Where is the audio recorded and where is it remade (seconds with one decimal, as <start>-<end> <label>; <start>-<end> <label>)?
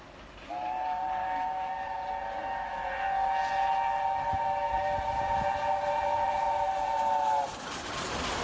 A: 0.0-1.2 recorded; 1.2-1.7 remade; 1.7-8.4 recorded